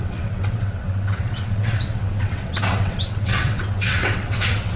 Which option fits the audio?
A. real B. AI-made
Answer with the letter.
B